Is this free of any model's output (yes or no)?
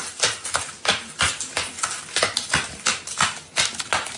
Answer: no